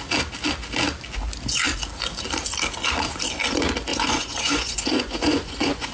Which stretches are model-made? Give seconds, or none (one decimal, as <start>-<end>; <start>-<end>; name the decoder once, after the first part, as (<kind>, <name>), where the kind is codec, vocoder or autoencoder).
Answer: 3.9-5.9 (vocoder, Vocos)